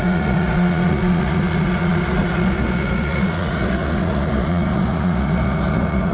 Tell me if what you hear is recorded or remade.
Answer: remade